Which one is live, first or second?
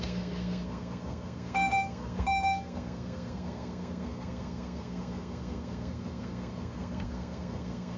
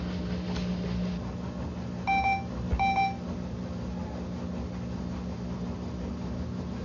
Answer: second